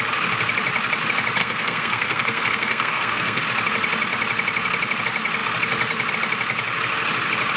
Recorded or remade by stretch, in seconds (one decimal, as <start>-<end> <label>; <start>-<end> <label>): 0.0-1.4 recorded; 1.4-3.4 remade; 3.4-7.6 recorded